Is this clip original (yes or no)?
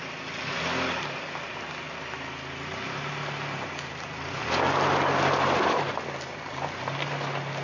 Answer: yes